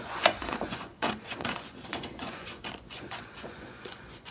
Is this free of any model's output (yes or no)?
no